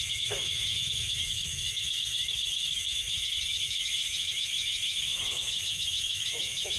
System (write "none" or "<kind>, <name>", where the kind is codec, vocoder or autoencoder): autoencoder, DAC-VAE